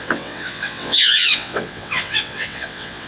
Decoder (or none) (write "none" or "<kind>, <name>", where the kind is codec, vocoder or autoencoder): vocoder, WaveNeXt